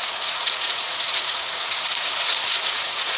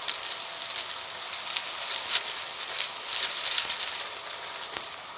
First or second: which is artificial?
first